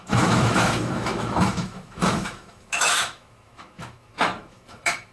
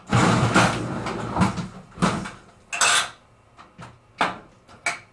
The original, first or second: second